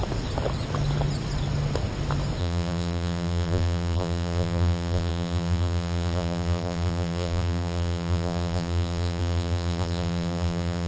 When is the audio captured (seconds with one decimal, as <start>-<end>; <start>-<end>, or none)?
0.0-2.4